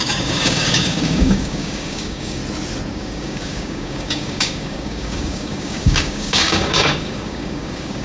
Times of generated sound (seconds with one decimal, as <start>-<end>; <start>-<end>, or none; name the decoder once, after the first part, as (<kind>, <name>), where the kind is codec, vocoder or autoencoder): 0.0-2.4 (codec, DAC); 2.9-8.0